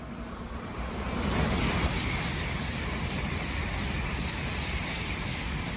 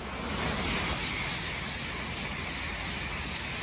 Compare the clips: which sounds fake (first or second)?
first